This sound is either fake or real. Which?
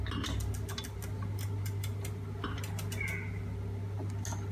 real